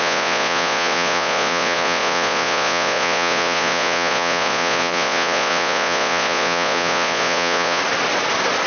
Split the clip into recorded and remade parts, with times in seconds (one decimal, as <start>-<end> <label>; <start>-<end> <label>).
0.0-7.8 remade; 7.8-8.7 recorded